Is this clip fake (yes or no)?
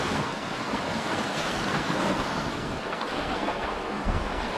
yes